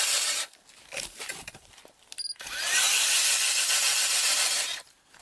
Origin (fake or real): real